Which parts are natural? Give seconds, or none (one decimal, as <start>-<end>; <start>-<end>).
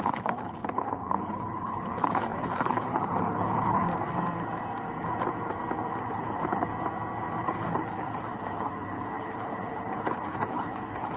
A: 3.9-6.0; 6.7-7.4